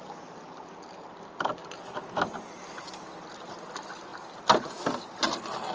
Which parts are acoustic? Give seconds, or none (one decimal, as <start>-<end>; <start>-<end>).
0.0-5.7